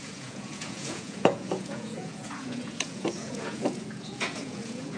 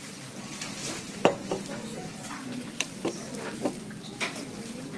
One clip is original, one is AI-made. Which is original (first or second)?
second